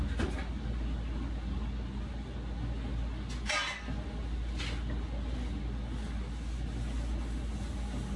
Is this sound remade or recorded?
recorded